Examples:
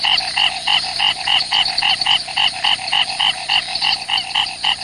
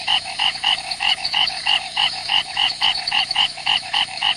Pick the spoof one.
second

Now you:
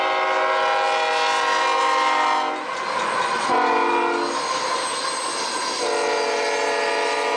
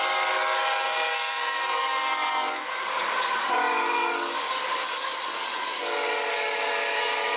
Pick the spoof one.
second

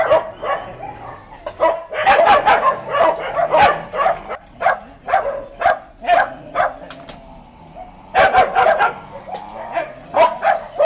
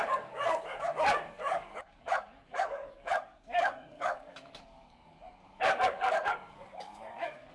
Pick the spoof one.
second